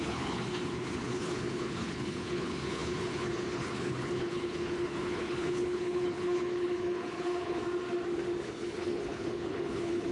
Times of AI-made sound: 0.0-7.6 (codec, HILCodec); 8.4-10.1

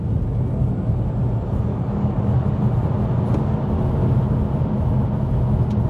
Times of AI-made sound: 1.7-2.6 (codec, DAC)

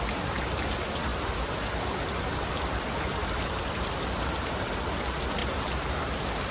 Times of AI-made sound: 3.2-4.7 (vocoder, BigVGAN v2); 5.4-5.9